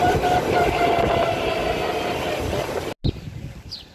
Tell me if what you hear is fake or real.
real